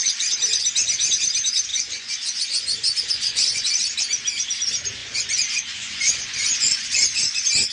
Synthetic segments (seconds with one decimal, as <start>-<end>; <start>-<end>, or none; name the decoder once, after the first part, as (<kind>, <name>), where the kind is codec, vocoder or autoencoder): 1.7-3.8 (vocoder, Vocos); 5.0-7.2